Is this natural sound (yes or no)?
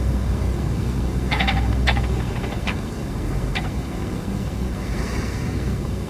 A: no